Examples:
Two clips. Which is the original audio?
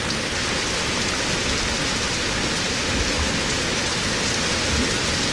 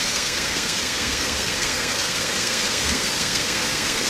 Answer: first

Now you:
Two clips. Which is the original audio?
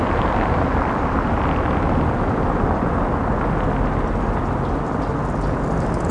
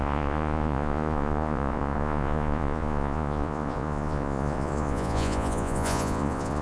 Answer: first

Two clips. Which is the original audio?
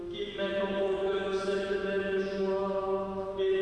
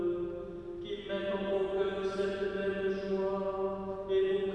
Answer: second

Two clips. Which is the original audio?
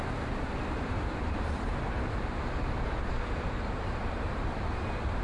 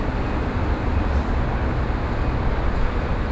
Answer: second